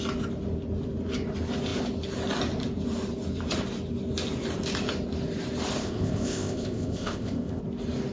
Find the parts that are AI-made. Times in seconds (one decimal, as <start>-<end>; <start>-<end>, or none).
5.8-7.6